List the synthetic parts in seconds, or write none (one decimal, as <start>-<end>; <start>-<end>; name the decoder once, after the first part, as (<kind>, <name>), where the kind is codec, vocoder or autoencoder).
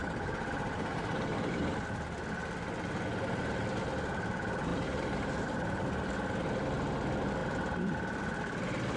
0.0-1.6 (vocoder, BigVGAN v2); 4.7-5.8; 7.4-8.4